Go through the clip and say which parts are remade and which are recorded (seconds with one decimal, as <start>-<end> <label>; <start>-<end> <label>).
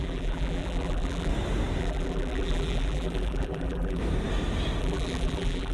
0.0-1.3 remade; 1.3-1.8 recorded; 1.8-4.0 remade; 4.0-4.8 recorded; 4.8-5.7 remade